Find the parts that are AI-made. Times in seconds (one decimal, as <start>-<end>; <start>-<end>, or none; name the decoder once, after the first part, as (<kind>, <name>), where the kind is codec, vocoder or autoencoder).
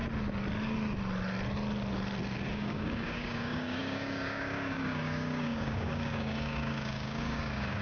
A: 2.5-7.8 (codec, DAC)